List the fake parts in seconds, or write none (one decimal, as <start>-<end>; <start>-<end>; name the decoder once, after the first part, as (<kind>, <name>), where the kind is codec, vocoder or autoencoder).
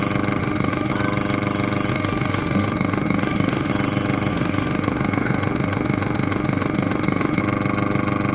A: 0.4-0.9 (autoencoder, DAC-VAE); 1.9-3.7; 4.3-7.4